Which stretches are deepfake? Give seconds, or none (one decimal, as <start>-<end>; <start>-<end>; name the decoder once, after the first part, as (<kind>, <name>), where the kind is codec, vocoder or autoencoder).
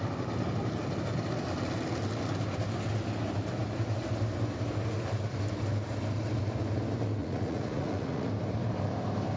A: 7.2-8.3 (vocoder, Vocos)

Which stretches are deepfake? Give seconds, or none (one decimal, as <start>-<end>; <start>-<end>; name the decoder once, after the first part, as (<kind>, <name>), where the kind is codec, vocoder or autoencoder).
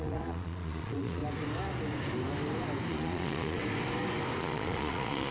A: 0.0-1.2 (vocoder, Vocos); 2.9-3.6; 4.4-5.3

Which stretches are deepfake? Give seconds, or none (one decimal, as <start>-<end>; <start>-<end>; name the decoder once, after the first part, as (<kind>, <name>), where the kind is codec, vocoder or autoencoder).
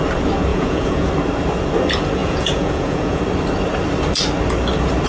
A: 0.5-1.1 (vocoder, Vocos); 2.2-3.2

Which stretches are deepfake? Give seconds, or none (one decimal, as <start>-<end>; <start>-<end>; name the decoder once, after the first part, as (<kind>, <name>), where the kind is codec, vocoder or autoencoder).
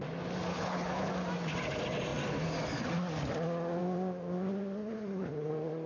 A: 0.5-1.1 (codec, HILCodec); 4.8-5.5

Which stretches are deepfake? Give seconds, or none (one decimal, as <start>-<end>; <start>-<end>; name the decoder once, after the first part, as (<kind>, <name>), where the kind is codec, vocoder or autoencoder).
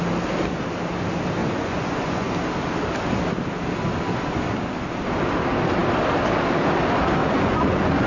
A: 1.4-2.3 (vocoder, Vocos); 7.2-8.1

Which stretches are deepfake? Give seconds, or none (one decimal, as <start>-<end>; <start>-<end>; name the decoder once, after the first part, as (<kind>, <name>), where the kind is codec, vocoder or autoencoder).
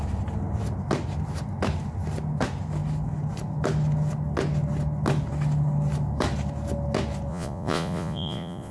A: 7.3-8.7 (vocoder, Vocos)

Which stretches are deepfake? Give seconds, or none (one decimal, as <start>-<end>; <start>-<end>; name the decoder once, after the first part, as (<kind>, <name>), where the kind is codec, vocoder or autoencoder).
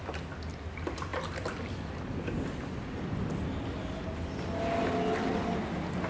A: none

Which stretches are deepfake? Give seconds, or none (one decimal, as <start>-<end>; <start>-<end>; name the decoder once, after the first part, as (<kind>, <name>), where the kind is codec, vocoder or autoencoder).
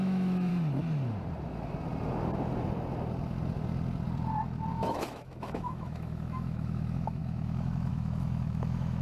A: 0.0-0.5 (autoencoder, DAC-VAE); 4.7-9.0